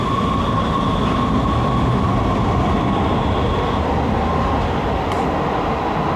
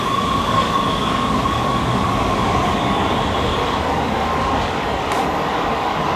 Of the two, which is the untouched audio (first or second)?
first